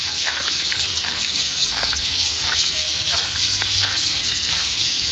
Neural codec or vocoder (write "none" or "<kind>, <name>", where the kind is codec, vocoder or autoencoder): codec, SNAC